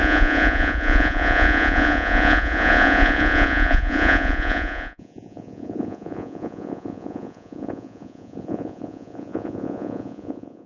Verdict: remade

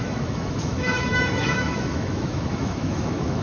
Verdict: remade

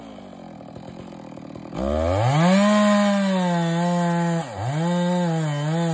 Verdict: recorded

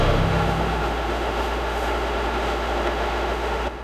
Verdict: remade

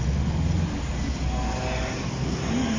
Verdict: recorded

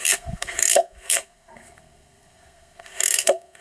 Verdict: remade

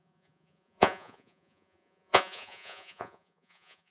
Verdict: remade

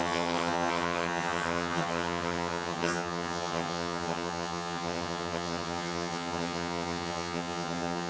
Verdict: remade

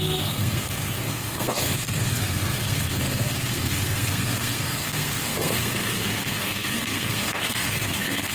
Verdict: remade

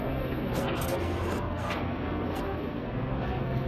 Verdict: remade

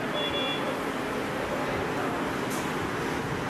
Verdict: recorded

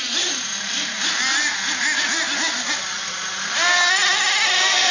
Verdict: recorded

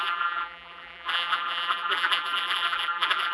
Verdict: remade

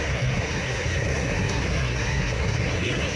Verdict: remade